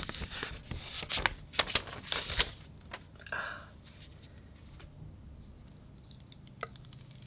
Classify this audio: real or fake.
real